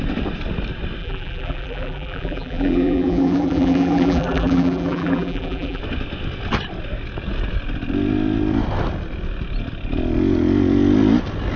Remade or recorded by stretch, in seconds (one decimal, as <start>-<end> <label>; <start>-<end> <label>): 0.0-1.0 recorded; 1.0-5.8 remade; 5.8-11.6 recorded